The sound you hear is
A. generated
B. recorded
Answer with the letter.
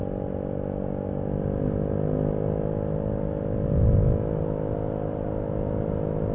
B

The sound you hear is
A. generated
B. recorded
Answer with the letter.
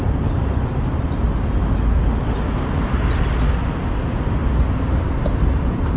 B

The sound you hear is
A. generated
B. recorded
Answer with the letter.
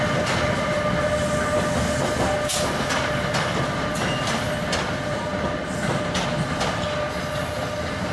B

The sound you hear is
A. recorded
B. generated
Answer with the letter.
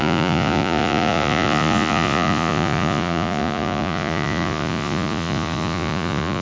B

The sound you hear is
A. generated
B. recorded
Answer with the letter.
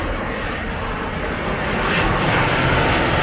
B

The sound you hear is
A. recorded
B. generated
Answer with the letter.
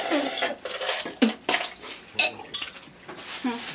A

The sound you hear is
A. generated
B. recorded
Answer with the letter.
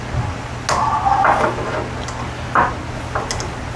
B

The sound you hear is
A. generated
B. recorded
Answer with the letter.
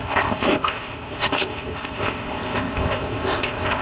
A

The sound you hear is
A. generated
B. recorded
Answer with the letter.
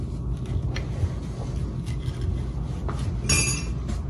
B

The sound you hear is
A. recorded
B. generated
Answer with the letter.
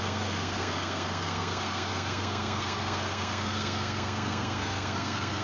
B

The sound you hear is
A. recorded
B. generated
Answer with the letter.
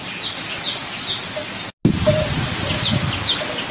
A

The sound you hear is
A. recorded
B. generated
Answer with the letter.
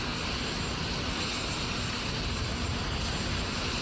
A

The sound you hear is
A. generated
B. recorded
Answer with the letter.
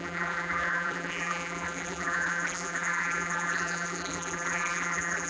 A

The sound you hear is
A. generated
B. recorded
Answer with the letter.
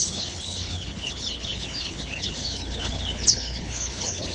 A